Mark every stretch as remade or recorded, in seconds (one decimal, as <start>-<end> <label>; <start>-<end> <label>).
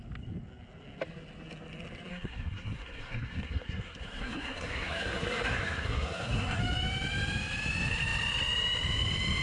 0.0-2.1 recorded; 2.1-6.6 remade; 6.6-9.4 recorded